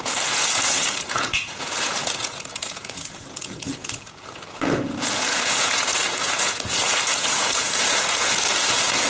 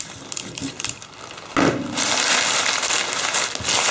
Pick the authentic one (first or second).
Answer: second